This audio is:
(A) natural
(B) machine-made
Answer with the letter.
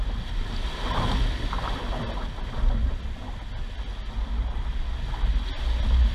A